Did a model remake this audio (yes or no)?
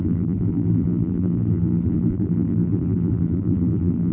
yes